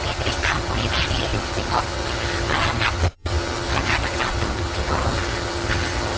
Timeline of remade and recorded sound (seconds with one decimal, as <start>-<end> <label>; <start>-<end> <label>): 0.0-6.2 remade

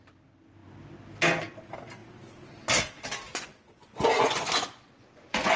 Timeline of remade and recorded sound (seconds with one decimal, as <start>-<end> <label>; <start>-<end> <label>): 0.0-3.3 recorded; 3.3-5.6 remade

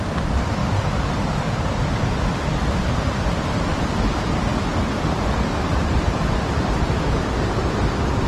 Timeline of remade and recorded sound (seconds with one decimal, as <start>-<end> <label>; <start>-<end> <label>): 0.0-0.6 recorded; 0.6-3.2 remade; 3.2-4.5 recorded; 4.5-7.8 remade; 7.8-8.3 recorded

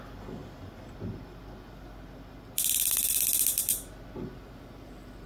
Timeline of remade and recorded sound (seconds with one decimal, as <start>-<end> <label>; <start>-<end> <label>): 0.0-5.3 recorded

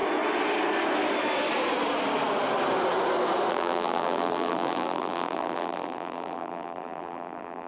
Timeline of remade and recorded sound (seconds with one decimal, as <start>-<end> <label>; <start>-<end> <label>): 0.0-3.5 recorded; 3.5-7.7 remade

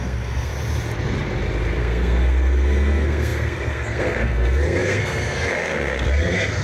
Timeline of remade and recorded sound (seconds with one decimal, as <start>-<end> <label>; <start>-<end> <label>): 0.0-0.5 remade; 0.5-1.8 recorded; 1.8-6.6 remade

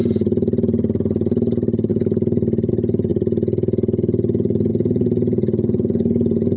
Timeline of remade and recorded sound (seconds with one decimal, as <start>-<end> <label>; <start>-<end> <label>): 0.0-6.6 recorded

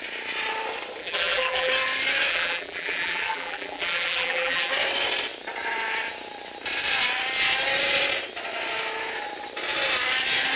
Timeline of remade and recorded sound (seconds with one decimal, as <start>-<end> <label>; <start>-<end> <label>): 0.0-1.0 recorded; 1.0-1.7 remade; 1.7-2.3 recorded; 2.3-4.7 remade; 4.7-10.6 recorded